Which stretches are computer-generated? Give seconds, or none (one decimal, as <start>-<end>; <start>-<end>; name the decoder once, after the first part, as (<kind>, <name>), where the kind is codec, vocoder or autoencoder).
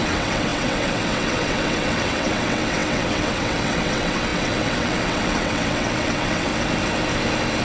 0.0-6.5 (vocoder, WaveNeXt)